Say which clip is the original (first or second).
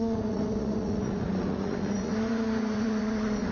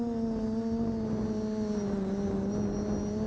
second